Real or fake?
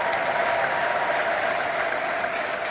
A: real